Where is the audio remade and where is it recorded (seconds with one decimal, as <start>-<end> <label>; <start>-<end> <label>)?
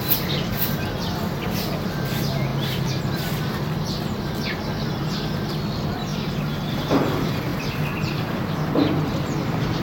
0.0-9.8 recorded